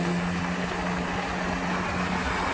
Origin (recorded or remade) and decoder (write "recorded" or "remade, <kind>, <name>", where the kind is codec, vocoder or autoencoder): recorded